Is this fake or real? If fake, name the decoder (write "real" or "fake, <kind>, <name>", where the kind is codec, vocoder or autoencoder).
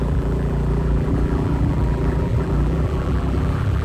fake, vocoder, BigVGAN v2